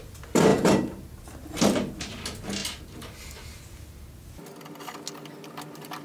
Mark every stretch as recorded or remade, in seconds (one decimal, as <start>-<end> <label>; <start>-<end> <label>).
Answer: 0.0-0.5 recorded; 0.5-1.2 remade; 1.2-6.0 recorded